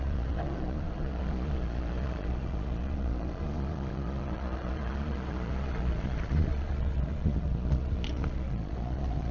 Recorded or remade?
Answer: remade